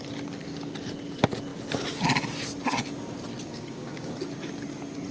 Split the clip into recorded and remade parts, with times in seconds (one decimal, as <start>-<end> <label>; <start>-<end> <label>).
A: 0.0-3.5 recorded; 3.5-4.1 remade; 4.1-5.1 recorded